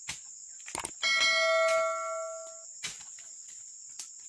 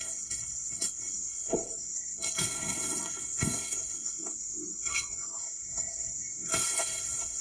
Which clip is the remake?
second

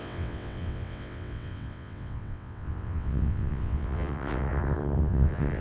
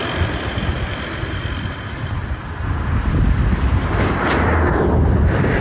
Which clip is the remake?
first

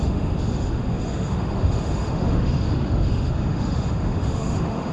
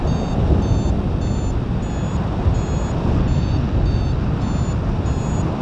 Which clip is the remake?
first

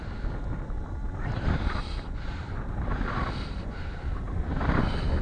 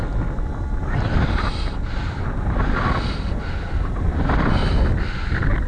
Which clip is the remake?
first